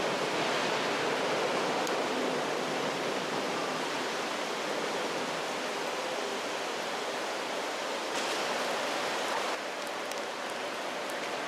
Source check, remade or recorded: recorded